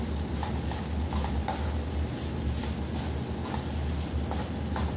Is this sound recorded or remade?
recorded